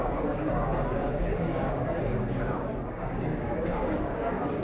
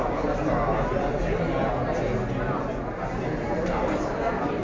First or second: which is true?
second